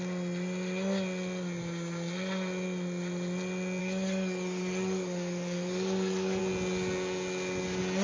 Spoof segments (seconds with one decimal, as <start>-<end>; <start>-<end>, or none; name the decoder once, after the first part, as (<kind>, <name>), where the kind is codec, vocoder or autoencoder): 3.8-6.4 (codec, DAC)